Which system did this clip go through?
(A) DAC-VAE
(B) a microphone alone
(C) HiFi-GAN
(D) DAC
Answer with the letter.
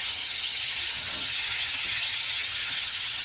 C